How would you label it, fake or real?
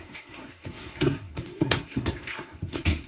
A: fake